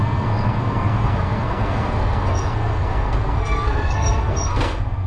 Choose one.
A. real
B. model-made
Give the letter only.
B